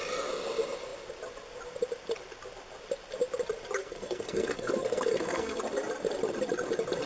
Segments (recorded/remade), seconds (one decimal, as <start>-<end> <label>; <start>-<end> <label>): 0.0-3.8 recorded; 3.8-5.6 remade; 5.6-7.1 recorded